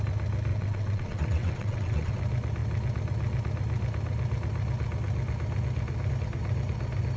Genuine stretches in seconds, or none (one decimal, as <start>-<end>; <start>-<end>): 0.0-0.5; 2.1-7.2